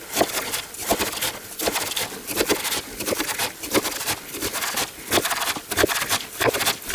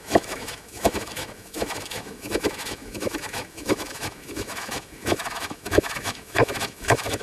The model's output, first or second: second